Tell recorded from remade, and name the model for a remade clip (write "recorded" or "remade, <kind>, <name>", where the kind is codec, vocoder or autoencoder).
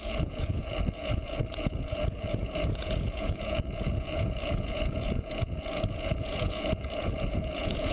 remade, vocoder, Vocos